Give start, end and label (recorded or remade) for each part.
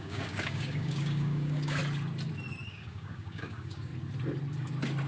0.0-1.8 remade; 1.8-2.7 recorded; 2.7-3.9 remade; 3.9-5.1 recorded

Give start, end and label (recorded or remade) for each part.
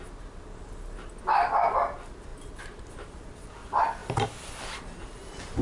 0.0-5.6 recorded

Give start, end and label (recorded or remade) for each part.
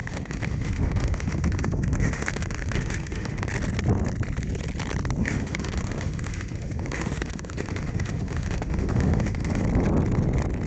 0.0-3.5 remade; 3.5-5.2 recorded; 5.2-9.6 remade; 9.6-10.7 recorded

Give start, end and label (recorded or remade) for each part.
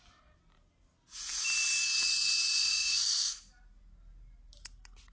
0.0-2.6 recorded; 2.6-3.3 remade; 3.3-5.1 recorded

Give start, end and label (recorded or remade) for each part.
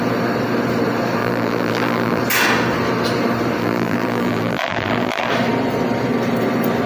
0.0-1.2 recorded; 1.2-2.2 remade; 2.2-3.6 recorded; 3.6-5.3 remade; 5.3-6.9 recorded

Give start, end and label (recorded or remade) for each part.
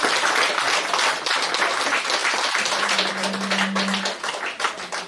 0.0-2.2 recorded; 2.2-3.1 remade; 3.1-5.1 recorded